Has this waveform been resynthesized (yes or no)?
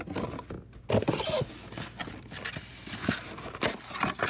no